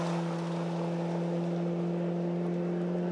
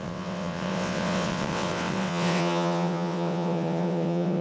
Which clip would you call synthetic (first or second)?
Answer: second